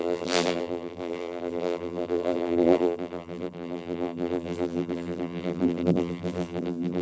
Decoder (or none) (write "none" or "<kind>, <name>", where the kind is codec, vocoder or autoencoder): vocoder, BigVGAN v2